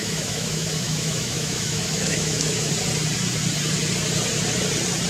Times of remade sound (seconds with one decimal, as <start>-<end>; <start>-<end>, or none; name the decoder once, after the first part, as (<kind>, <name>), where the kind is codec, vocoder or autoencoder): 0.0-2.7 (autoencoder, DAC-VAE)